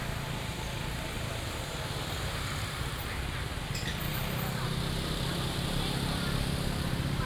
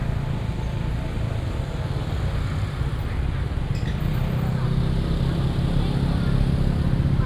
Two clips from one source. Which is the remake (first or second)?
first